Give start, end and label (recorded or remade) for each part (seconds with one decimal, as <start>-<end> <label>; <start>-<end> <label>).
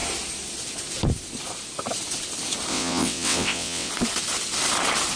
0.0-2.7 recorded; 2.7-3.9 remade; 3.9-5.2 recorded